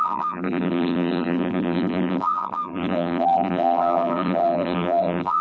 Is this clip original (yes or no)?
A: no